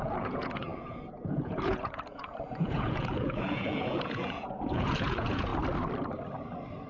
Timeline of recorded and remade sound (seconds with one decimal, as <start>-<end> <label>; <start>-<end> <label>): 0.0-5.5 remade; 5.5-6.9 recorded